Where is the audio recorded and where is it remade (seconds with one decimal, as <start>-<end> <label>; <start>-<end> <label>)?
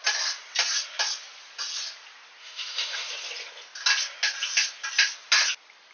0.0-2.4 recorded; 2.4-3.1 remade; 3.1-5.9 recorded